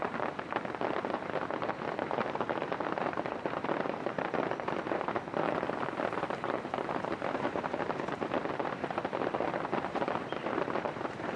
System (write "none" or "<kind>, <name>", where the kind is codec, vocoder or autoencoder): vocoder, BigVGAN v2